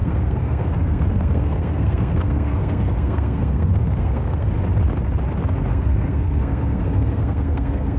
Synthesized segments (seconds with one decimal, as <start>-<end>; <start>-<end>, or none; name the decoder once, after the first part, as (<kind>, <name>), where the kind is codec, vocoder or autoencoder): 0.0-4.5 (codec, SNAC); 5.7-8.0